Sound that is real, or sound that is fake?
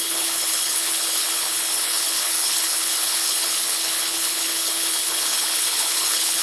fake